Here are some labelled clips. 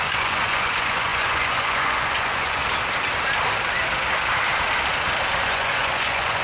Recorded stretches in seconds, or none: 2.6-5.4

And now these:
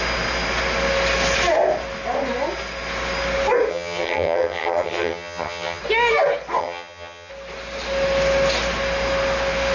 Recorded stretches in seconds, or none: 0.0-3.7; 5.8-6.6; 7.3-9.7

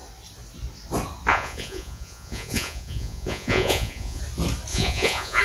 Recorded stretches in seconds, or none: 0.0-1.3; 4.2-4.7

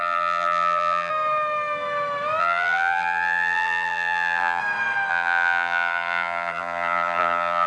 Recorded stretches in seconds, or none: 1.1-2.4; 4.6-5.1